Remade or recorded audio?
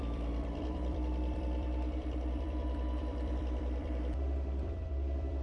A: remade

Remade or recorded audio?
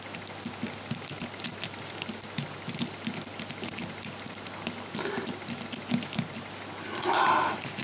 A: recorded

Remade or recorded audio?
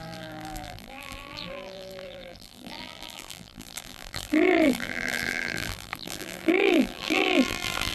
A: remade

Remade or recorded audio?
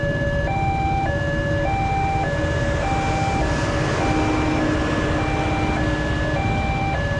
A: recorded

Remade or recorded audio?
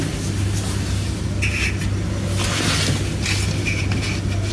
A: recorded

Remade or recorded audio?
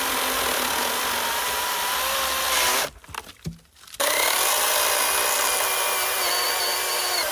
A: recorded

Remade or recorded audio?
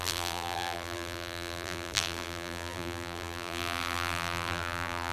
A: remade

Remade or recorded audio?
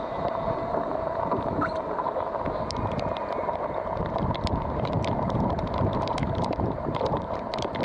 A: remade